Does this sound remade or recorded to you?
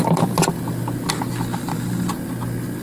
recorded